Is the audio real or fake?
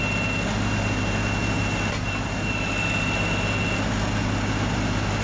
real